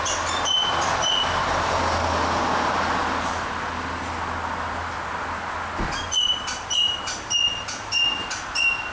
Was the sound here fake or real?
real